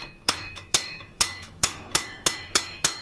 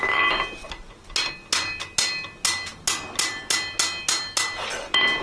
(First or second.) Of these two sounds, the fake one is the first